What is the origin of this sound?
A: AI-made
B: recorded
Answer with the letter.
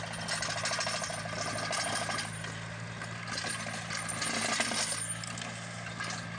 B